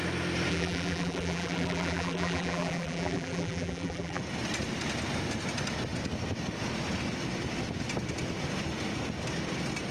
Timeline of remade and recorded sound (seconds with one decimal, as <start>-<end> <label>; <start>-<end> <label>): 0.0-0.5 recorded; 0.5-4.2 remade; 4.2-9.9 recorded